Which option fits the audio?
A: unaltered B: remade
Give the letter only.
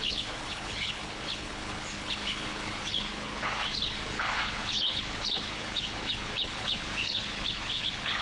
B